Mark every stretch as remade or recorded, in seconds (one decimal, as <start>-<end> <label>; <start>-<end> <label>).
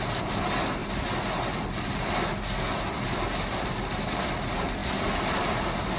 0.0-6.0 recorded